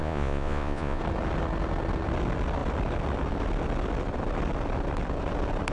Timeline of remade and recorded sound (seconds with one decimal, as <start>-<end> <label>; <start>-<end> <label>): 0.0-1.0 remade; 1.0-5.7 recorded